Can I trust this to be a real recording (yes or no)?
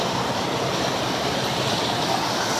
yes